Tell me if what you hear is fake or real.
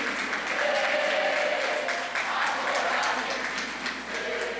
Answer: real